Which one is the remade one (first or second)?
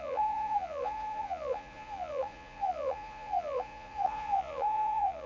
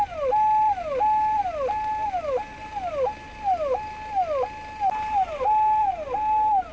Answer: first